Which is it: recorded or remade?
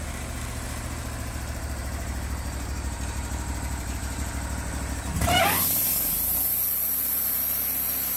remade